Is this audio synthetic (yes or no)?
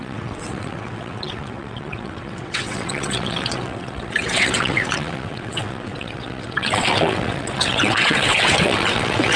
yes